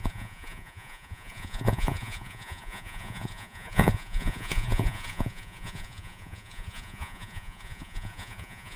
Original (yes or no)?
no